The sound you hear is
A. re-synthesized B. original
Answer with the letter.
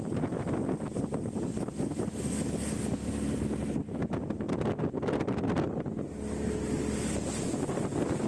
B